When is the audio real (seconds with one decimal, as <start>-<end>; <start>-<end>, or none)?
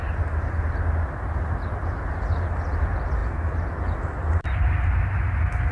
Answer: 0.0-5.7